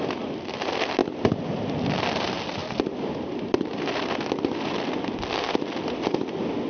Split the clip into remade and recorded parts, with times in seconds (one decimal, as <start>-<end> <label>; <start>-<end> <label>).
0.0-6.7 recorded